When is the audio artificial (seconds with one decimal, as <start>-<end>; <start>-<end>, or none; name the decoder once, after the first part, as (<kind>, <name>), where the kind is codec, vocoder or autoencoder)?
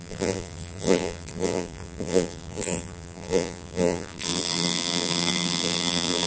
0.0-6.3 (vocoder, BigVGAN v2)